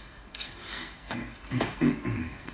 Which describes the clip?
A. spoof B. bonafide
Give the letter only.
A